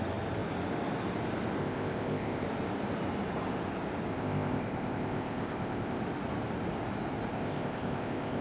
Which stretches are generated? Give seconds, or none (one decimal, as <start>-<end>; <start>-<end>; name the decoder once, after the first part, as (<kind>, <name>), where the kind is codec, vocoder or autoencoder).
1.6-2.4 (codec, ZipCodec); 4.1-6.0; 7.3-8.4